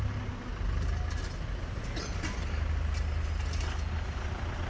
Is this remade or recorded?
recorded